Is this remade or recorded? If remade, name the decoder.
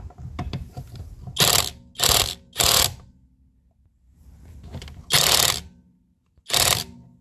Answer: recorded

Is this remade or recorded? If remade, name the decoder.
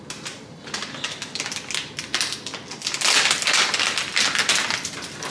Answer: recorded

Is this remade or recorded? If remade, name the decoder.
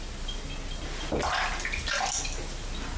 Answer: recorded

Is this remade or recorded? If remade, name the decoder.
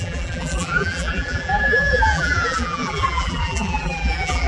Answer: remade, vocoder, BigVGAN v2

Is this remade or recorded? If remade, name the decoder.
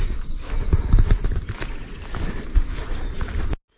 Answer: recorded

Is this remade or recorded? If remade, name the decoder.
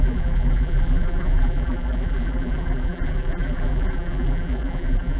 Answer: remade, vocoder, BigVGAN v2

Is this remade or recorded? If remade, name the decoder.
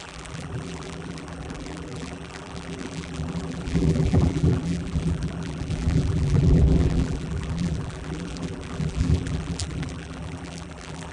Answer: remade, vocoder, BigVGAN v2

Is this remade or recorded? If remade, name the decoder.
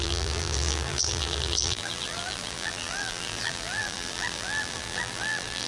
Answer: remade, vocoder, BigVGAN v2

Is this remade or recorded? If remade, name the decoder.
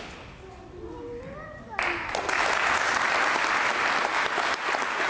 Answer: recorded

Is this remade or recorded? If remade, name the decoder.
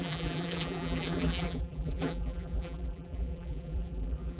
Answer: remade, vocoder, BigVGAN v2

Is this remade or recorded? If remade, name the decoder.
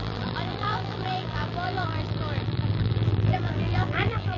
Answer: remade, vocoder, BigVGAN v2